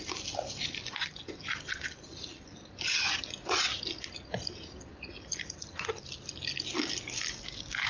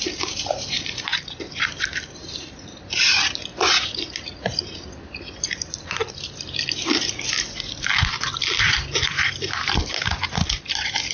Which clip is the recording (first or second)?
first